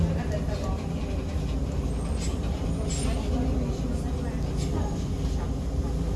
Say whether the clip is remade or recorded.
recorded